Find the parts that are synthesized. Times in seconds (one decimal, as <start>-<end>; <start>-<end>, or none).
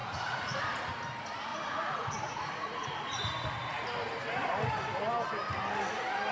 0.0-0.6; 1.5-3.3